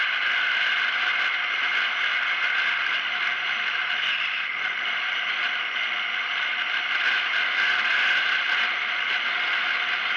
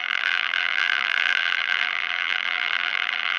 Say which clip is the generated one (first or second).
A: second